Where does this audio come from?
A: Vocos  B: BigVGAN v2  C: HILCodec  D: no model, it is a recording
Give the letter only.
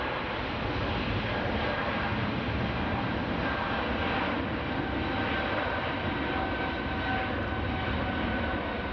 D